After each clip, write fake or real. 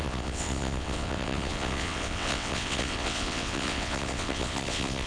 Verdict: fake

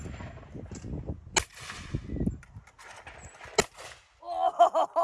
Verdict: real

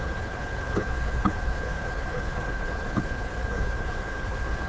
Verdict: fake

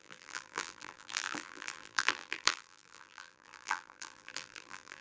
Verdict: fake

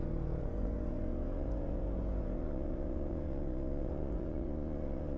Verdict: fake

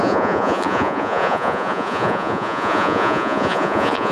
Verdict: fake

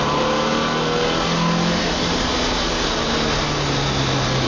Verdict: real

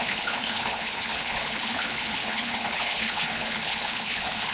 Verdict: fake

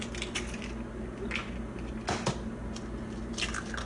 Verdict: real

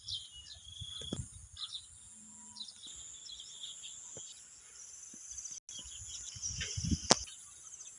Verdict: real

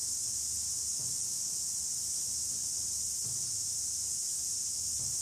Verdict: real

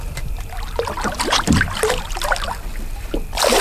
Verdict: real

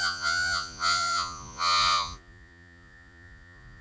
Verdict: fake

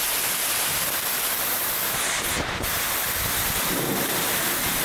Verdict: real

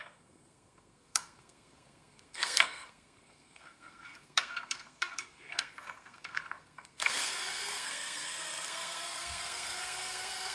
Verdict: fake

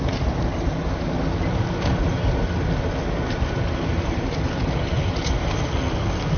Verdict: real